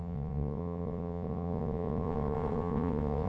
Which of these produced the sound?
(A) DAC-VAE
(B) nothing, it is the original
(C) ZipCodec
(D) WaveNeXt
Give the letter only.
D